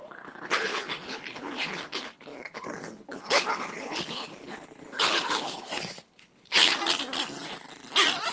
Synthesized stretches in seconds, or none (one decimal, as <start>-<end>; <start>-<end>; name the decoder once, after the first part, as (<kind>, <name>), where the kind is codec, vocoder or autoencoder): 0.0-6.7 (codec, HILCodec)